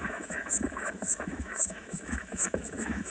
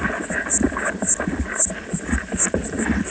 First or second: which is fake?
first